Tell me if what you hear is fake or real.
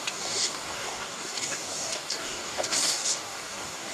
fake